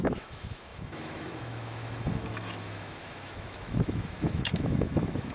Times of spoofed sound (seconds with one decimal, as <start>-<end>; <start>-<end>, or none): 0.0-5.3